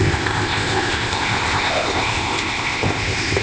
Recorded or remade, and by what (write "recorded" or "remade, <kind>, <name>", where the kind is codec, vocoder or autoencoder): remade, codec, ZipCodec